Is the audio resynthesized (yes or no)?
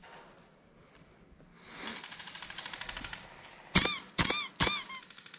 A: no